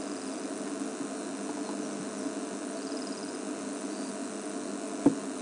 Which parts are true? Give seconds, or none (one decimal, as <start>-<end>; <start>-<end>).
0.0-5.4